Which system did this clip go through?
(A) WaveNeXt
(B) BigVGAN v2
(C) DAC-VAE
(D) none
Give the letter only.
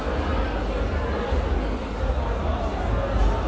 D